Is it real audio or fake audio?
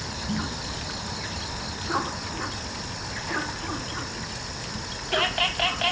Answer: real